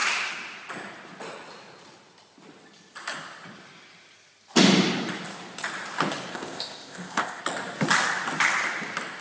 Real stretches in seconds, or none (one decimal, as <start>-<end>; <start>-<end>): 0.0-6.3; 7.4-9.2